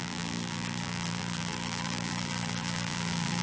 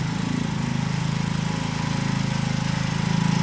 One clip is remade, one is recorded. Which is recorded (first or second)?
second